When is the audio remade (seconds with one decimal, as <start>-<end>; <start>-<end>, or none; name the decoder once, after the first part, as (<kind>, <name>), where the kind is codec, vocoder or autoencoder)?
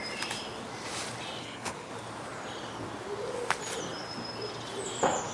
1.4-1.9 (codec, HILCodec)